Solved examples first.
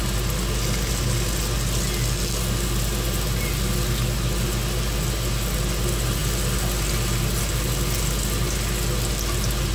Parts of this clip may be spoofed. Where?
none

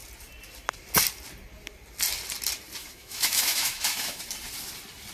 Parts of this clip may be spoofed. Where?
2.8-4.2 (autoencoder, DAC-VAE)